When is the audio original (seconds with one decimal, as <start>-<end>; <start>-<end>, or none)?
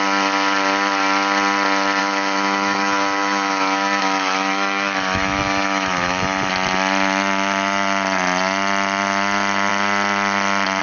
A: 0.0-2.0; 6.5-10.8